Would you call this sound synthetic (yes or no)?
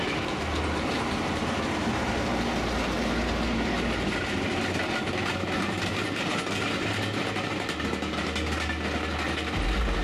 no